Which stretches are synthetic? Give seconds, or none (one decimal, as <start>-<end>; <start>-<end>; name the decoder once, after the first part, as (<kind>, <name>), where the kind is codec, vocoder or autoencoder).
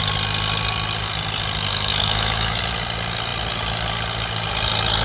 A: 1.7-2.6 (autoencoder, DAC-VAE)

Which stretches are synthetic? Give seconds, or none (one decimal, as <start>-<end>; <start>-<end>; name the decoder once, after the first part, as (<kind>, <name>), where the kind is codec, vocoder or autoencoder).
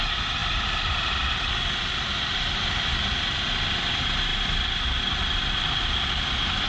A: none